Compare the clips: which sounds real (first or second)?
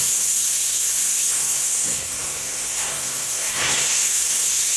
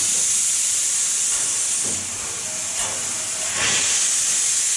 second